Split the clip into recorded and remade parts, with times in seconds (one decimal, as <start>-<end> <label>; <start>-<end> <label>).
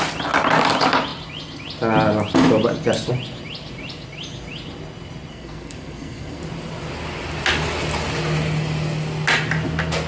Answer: 0.0-5.3 recorded; 5.3-6.4 remade; 6.4-10.1 recorded